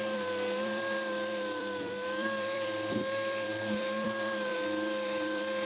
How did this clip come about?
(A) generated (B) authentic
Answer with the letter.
A